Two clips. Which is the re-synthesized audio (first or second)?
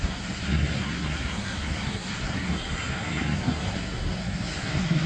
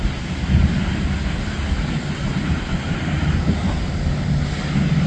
first